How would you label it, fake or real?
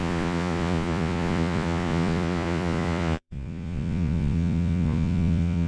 fake